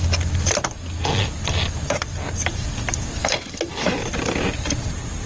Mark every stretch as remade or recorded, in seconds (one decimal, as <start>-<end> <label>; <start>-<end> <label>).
0.0-3.2 recorded; 3.2-4.0 remade; 4.0-5.3 recorded